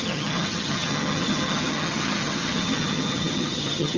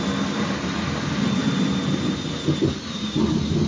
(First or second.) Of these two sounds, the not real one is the first